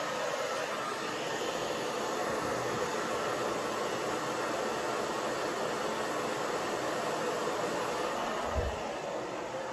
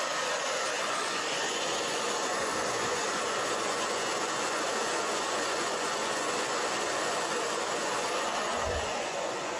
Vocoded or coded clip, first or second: second